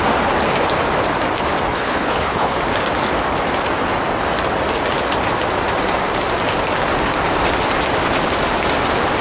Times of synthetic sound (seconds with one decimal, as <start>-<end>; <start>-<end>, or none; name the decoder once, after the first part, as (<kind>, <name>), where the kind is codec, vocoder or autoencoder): 1.7-2.6 (codec, HILCodec)